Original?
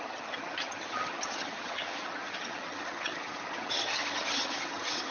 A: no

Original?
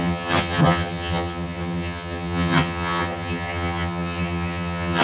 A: no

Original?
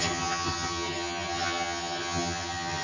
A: no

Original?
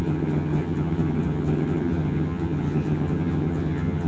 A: no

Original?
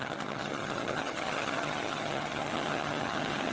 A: no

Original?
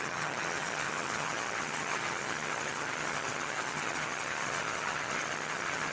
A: no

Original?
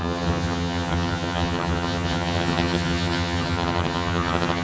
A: no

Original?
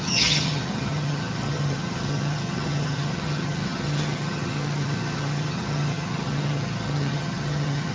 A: no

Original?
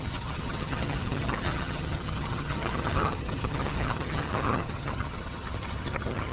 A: no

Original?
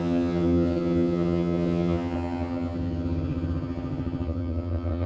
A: no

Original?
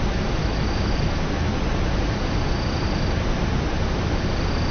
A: yes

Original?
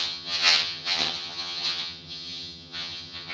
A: no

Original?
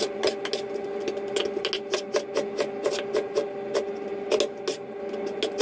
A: yes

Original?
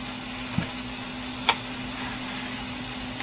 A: yes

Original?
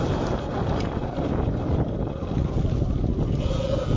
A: yes